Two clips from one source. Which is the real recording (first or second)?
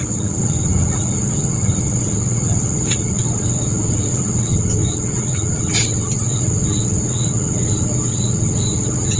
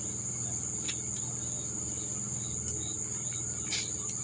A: second